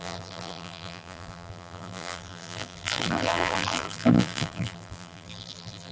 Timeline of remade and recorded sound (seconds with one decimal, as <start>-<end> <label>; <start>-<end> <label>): 0.0-5.9 remade